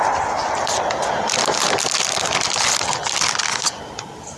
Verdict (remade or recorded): recorded